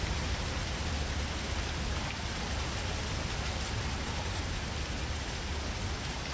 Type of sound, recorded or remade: recorded